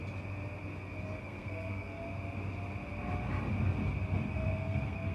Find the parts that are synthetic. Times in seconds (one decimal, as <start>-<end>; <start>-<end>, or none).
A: 1.2-2.0; 4.3-5.1